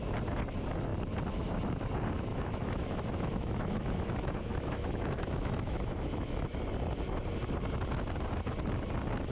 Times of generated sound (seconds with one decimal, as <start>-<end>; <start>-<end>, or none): 2.3-6.6